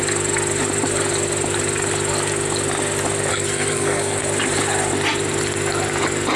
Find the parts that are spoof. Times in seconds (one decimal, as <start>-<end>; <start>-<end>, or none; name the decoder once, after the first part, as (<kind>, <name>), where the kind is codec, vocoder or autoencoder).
3.3-4.2 (codec, SNAC)